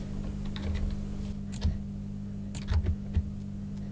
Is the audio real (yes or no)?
yes